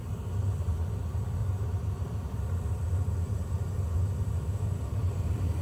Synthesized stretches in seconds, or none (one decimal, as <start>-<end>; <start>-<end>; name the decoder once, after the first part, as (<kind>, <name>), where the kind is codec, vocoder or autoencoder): 0.0-1.4 (vocoder, BigVGAN v2); 4.7-5.6